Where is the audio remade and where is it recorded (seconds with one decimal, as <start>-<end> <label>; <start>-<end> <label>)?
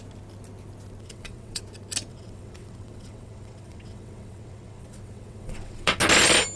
0.0-1.0 recorded; 1.0-1.6 remade; 1.6-2.1 recorded; 2.1-6.0 remade; 6.0-6.6 recorded